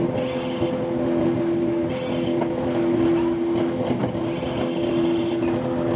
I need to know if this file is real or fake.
real